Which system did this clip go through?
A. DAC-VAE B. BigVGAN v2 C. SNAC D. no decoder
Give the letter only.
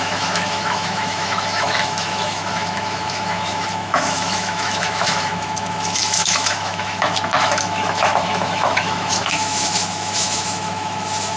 A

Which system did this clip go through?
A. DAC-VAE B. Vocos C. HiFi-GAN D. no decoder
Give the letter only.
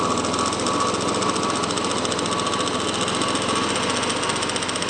D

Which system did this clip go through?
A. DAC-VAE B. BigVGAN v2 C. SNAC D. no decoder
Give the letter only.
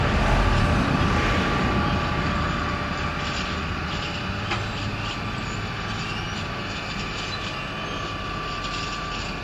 D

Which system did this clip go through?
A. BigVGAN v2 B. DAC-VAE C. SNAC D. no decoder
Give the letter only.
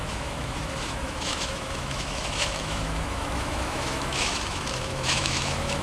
B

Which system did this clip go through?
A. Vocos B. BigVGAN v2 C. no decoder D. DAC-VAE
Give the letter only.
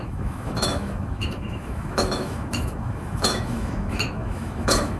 D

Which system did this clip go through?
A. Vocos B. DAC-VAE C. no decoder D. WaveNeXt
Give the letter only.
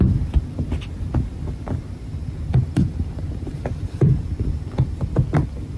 C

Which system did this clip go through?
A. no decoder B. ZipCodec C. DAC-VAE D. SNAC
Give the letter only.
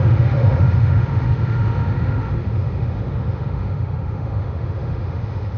C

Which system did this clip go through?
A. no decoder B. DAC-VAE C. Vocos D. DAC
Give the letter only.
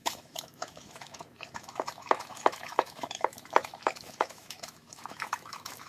B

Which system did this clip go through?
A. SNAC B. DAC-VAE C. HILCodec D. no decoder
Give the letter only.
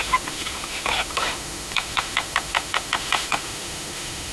B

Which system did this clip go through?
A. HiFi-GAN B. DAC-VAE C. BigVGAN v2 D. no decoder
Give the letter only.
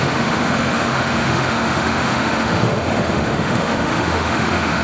B